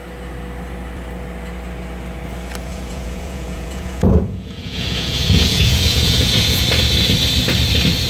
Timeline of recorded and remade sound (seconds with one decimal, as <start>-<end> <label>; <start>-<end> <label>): 0.0-2.7 recorded; 2.7-6.6 remade; 6.6-8.1 recorded

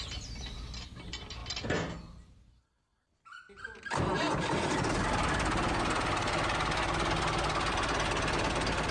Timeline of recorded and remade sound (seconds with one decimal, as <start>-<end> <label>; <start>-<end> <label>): 0.0-8.9 recorded

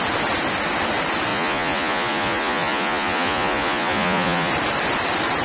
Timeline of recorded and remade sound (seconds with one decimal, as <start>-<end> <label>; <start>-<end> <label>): 0.0-1.3 recorded; 1.3-4.5 remade; 4.5-5.4 recorded

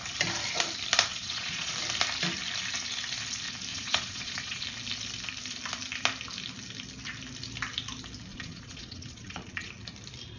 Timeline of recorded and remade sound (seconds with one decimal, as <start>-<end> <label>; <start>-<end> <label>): 0.0-1.1 recorded; 1.1-1.7 remade; 1.7-3.7 recorded; 3.7-4.6 remade; 4.6-8.3 recorded; 8.3-9.7 remade; 9.7-10.4 recorded